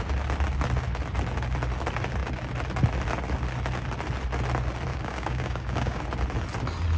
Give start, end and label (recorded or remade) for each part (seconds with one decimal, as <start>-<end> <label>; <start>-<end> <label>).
0.0-4.9 recorded; 4.9-6.0 remade; 6.0-7.0 recorded